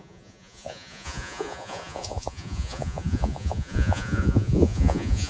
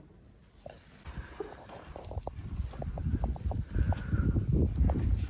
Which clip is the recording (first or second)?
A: second